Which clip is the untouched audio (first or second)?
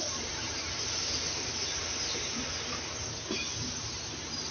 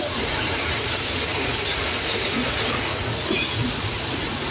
first